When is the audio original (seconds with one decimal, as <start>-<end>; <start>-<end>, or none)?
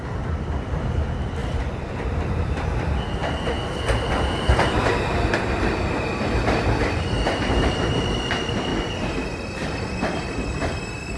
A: 3.2-4.1